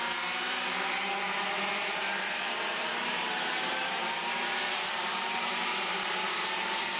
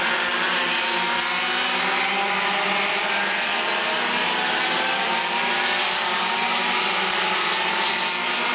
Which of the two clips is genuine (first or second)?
second